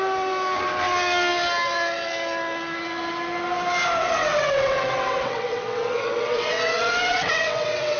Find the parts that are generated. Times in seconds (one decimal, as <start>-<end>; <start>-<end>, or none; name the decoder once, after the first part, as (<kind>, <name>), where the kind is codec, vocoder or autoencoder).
4.0-8.0 (vocoder, WaveNeXt)